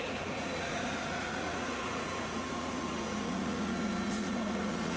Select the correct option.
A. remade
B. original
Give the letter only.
A